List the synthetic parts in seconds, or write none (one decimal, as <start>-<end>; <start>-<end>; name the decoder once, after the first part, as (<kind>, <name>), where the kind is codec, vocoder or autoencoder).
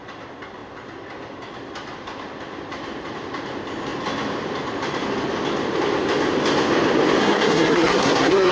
7.2-8.5 (codec, SNAC)